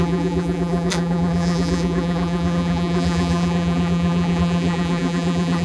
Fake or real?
fake